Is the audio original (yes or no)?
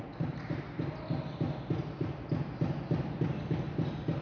yes